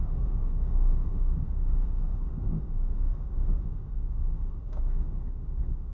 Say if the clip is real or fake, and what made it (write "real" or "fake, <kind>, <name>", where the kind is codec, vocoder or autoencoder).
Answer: fake, autoencoder, DAC-VAE